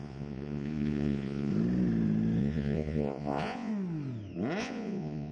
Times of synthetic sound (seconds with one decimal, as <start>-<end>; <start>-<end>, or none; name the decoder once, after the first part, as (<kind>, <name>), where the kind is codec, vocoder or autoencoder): 0.0-1.5 (vocoder, Vocos); 2.4-3.7; 4.6-5.3